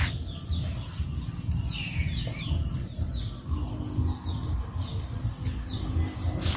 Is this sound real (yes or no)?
yes